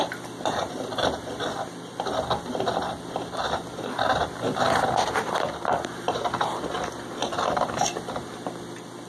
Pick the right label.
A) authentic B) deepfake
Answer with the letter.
B